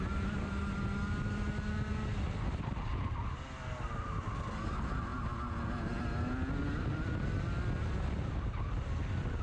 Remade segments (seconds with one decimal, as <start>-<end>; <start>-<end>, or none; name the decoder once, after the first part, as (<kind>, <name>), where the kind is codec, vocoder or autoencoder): none